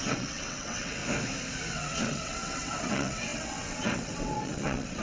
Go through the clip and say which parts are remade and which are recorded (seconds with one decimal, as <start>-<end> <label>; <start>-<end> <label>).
0.0-1.0 remade; 1.0-1.7 recorded; 1.7-5.0 remade